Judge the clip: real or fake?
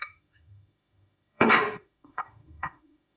fake